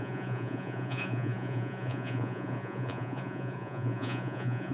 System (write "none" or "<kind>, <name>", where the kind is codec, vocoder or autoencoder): vocoder, Vocos